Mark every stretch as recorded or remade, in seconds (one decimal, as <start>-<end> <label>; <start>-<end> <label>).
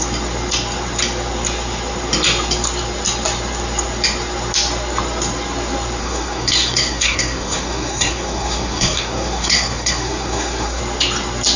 0.0-6.0 recorded; 6.0-10.8 remade; 10.8-11.6 recorded